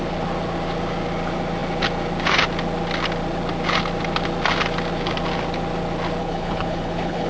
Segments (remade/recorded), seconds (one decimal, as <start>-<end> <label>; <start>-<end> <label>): 0.0-6.2 recorded; 6.2-7.3 remade